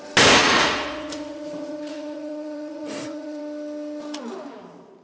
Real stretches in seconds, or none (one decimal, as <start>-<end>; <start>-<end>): 0.0-0.4; 3.4-5.0